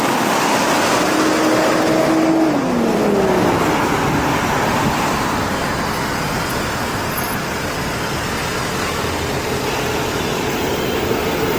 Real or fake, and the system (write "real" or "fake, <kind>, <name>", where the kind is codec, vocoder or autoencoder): real